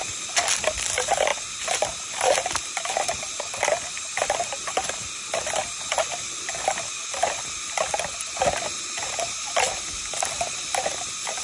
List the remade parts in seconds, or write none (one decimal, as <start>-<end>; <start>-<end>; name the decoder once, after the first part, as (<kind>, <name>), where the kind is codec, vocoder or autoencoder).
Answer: none